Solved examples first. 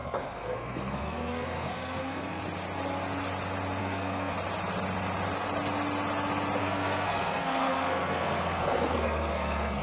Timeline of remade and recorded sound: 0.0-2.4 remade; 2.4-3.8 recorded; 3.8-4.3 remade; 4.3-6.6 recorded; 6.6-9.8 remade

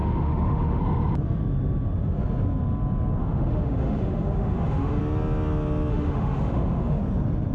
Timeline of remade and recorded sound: 0.0-0.8 remade; 0.8-3.2 recorded; 3.2-5.0 remade; 5.0-5.9 recorded; 5.9-7.0 remade; 7.0-7.5 recorded

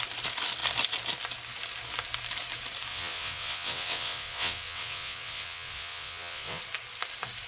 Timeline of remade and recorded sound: 0.0-2.9 recorded; 2.9-6.6 remade; 6.6-7.5 recorded

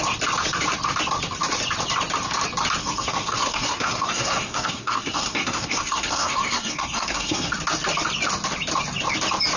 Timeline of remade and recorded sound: 0.0-2.8 recorded; 2.8-7.5 remade; 7.5-9.6 recorded